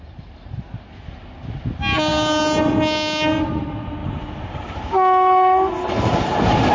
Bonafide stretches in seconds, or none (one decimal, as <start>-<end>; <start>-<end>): 0.0-6.7